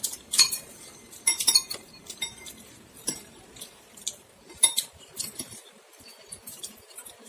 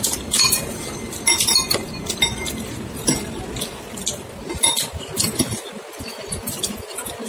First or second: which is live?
second